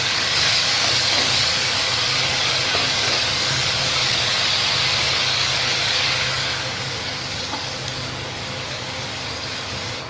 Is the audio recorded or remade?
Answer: remade